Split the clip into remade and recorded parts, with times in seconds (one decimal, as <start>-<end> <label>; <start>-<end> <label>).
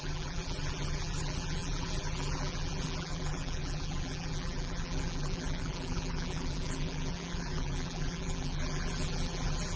0.0-9.8 remade